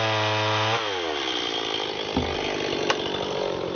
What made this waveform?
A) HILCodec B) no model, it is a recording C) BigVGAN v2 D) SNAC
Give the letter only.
B